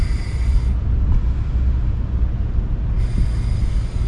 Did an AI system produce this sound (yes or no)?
no